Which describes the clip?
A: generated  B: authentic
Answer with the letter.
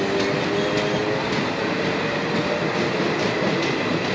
B